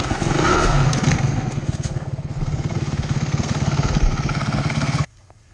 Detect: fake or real fake